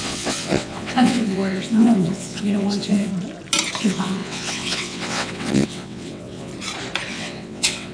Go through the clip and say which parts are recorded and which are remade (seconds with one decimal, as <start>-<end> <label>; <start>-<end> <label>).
0.0-3.1 remade; 3.1-3.8 recorded; 3.8-6.5 remade; 6.5-7.1 recorded; 7.1-7.9 remade